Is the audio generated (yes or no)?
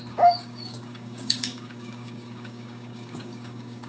yes